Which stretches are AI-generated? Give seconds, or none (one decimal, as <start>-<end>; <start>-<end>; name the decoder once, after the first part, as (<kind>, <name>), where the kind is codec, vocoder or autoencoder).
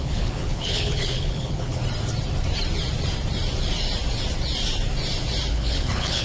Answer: 0.0-1.8 (codec, HILCodec); 5.5-6.2